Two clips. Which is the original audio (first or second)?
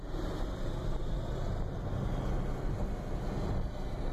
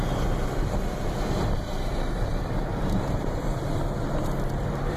first